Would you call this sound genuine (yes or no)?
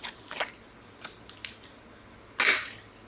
yes